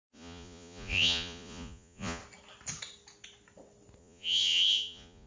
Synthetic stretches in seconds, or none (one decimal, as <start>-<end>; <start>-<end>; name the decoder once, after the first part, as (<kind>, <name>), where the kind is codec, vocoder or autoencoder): 0.0-2.2 (vocoder, Vocos); 4.0-5.3